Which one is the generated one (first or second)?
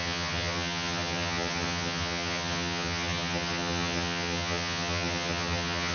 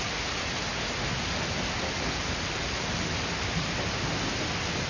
first